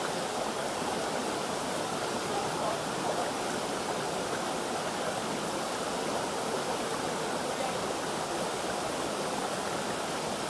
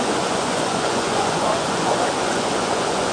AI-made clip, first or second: second